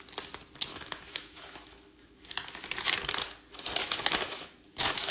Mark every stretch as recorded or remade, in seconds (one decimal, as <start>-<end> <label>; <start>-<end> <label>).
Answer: 0.0-0.7 recorded; 0.7-2.3 remade; 2.3-3.8 recorded; 3.8-5.1 remade